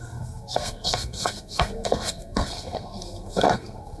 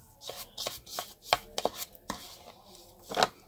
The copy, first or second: first